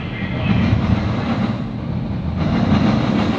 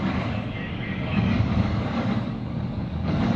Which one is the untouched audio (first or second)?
first